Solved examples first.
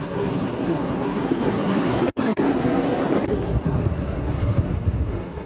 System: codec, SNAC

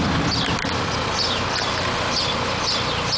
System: none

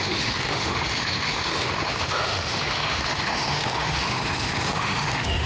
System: autoencoder, DAC-VAE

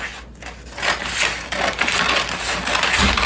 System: none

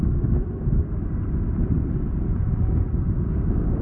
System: none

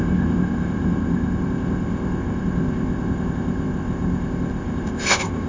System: codec, ZipCodec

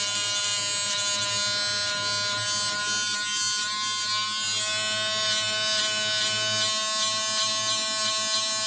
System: none